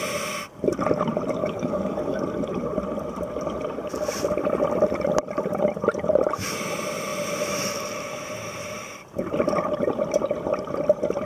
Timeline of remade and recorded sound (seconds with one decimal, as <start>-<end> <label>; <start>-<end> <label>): 0.0-1.4 recorded; 1.4-2.2 remade; 2.2-11.3 recorded